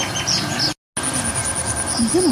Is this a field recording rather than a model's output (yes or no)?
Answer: yes